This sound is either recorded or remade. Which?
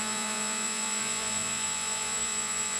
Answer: remade